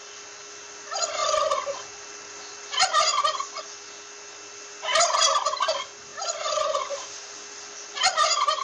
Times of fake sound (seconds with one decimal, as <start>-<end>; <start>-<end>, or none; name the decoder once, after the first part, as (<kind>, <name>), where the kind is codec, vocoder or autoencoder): none